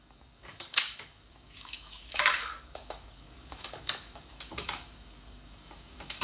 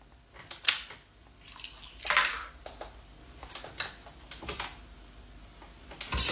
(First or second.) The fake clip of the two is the first